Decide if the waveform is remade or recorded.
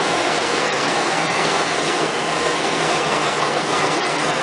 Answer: remade